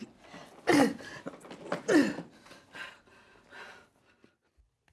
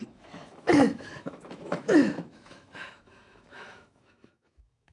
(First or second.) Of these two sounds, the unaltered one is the first